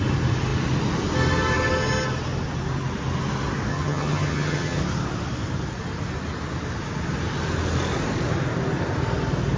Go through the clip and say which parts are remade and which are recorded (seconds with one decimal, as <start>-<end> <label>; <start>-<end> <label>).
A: 0.0-3.7 recorded; 3.7-4.8 remade; 4.8-9.6 recorded